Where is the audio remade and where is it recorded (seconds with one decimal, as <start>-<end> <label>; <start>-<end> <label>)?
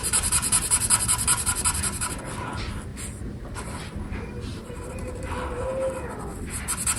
0.0-2.1 remade; 2.1-4.5 recorded; 4.5-5.2 remade; 5.2-7.0 recorded